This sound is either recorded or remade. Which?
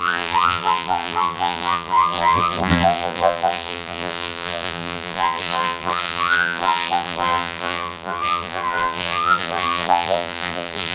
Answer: remade